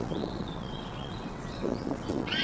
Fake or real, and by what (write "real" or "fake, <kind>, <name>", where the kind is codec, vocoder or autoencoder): fake, vocoder, WaveNeXt